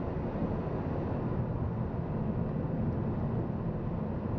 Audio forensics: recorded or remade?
recorded